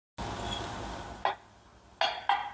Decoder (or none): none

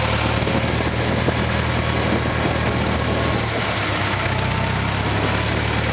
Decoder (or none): none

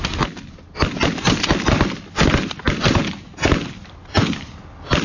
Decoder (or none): none